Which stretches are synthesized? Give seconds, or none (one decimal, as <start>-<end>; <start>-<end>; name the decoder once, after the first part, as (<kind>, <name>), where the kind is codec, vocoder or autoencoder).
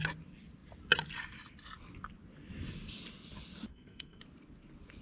3.7-4.2 (codec, SNAC)